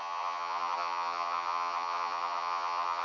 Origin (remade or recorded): remade